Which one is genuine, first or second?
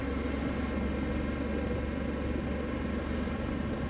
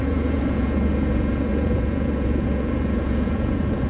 first